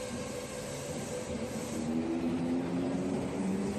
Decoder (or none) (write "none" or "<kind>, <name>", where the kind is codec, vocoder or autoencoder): none